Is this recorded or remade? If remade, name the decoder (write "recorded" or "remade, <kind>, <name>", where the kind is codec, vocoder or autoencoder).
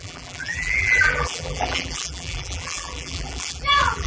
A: remade, vocoder, BigVGAN v2